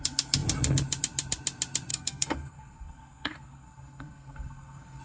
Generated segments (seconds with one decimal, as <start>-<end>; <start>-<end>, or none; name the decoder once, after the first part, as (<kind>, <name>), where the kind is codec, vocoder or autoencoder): 1.9-5.0 (codec, SNAC)